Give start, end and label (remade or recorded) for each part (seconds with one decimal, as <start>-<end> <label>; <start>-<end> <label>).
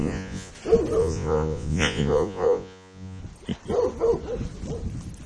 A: 0.0-0.5 remade; 0.5-1.0 recorded; 1.0-3.2 remade; 3.2-5.3 recorded